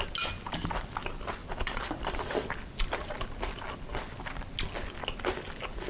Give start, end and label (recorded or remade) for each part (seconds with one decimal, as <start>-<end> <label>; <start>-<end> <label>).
0.0-1.4 recorded; 1.4-2.2 remade; 2.2-5.9 recorded